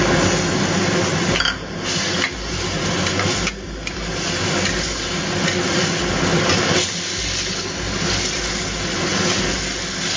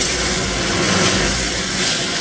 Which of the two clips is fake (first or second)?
second